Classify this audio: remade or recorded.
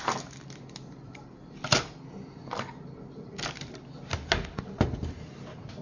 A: recorded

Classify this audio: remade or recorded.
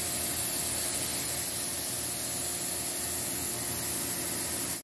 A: recorded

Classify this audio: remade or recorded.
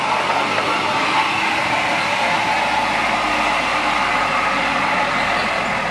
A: recorded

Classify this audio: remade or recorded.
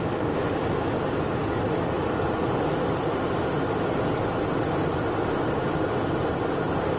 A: recorded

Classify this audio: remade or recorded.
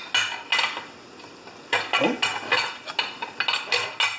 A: recorded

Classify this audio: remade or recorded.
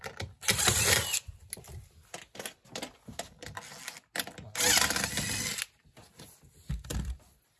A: recorded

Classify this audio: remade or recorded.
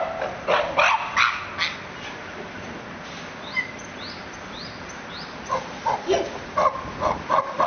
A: recorded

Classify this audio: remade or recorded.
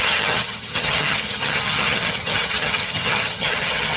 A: remade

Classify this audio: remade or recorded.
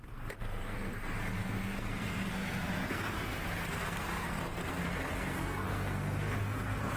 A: remade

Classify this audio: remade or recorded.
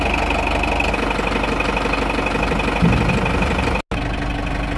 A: recorded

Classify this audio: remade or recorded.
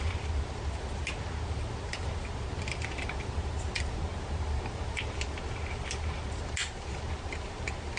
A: recorded